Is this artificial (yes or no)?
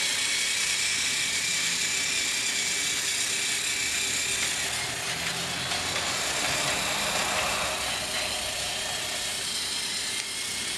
no